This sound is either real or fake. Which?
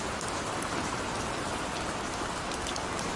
real